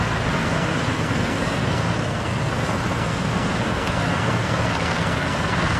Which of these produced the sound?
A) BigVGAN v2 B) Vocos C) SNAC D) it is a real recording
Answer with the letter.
C